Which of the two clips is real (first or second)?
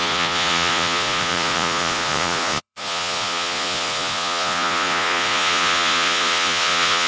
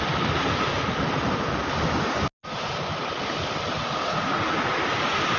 second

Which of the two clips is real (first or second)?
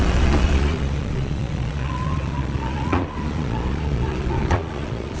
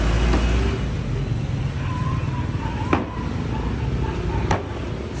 second